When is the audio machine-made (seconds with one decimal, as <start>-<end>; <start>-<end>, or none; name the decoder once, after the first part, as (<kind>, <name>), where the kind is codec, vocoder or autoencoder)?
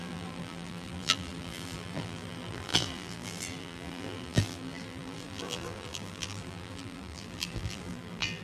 0.0-8.4 (vocoder, BigVGAN v2)